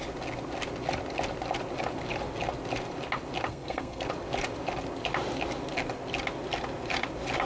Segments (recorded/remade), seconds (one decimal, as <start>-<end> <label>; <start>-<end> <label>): 0.0-3.5 recorded; 3.5-4.0 remade; 4.0-7.5 recorded